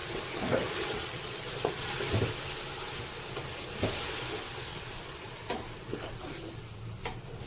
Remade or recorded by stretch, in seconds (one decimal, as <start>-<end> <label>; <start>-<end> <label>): 0.0-1.9 remade; 1.9-4.7 recorded; 4.7-5.3 remade; 5.3-7.5 recorded